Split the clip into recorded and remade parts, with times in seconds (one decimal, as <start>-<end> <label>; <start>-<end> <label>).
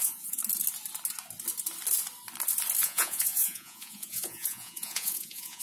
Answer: 0.0-0.4 remade; 0.4-2.8 recorded; 2.8-5.6 remade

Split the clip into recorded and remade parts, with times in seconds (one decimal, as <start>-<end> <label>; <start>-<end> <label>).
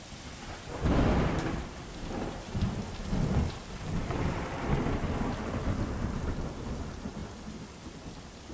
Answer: 0.0-8.5 recorded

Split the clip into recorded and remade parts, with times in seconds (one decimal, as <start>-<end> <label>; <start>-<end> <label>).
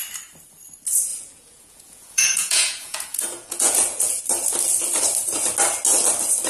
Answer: 0.0-1.1 recorded; 1.1-4.2 remade; 4.2-6.5 recorded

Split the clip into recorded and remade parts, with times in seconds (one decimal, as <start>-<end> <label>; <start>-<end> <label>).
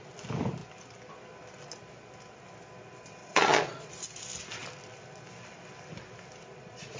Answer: 0.0-3.2 recorded; 3.2-3.9 remade; 3.9-6.4 recorded; 6.4-7.0 remade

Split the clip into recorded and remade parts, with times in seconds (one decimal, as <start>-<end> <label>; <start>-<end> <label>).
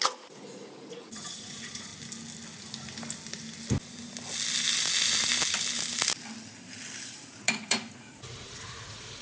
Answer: 0.0-1.9 remade; 1.9-7.0 recorded; 7.0-9.2 remade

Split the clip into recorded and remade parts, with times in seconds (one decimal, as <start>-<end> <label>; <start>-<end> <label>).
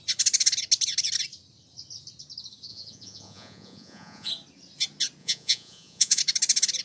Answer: 0.0-2.7 recorded; 2.7-4.3 remade; 4.3-5.2 recorded; 5.2-6.2 remade; 6.2-6.8 recorded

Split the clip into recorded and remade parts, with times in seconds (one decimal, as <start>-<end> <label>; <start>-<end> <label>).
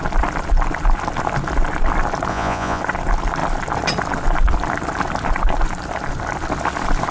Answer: 0.0-2.3 recorded; 2.3-2.8 remade; 2.8-7.1 recorded